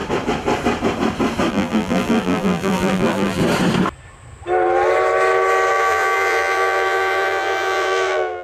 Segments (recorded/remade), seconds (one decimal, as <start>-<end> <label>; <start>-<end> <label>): 0.0-1.5 recorded; 1.5-3.4 remade; 3.4-5.7 recorded; 5.7-8.4 remade